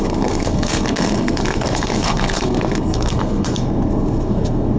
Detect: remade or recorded remade